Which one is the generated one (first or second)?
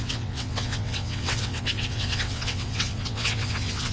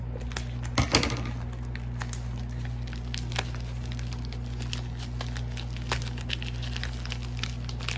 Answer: first